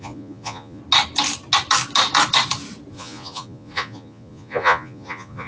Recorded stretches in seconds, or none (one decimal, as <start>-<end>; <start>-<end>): 0.8-2.9